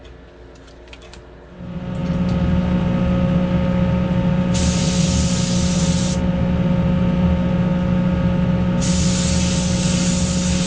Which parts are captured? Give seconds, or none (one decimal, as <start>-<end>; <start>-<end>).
0.0-10.7

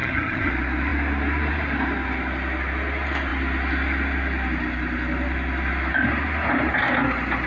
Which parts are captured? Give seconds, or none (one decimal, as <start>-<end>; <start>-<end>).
0.5-7.5

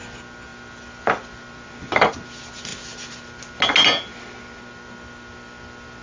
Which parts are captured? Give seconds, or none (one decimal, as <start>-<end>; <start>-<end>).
0.0-6.0

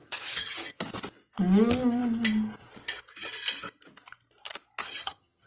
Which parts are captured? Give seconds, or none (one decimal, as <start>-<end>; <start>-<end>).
0.8-4.8

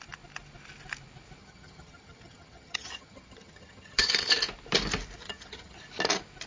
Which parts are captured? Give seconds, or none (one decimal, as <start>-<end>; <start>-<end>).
0.0-1.4; 4.1-5.2; 5.8-6.5

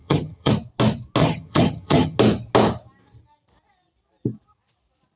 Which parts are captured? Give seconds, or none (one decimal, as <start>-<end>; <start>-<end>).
0.5-1.2; 2.2-5.2

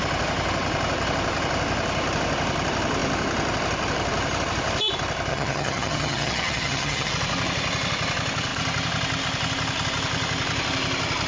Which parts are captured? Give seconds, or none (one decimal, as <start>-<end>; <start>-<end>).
0.0-5.3; 7.1-11.3

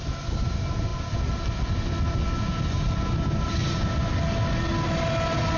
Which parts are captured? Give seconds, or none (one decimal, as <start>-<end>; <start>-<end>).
0.0-5.6